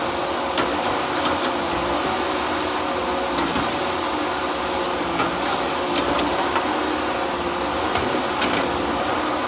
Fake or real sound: real